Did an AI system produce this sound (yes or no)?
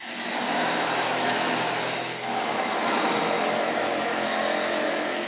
yes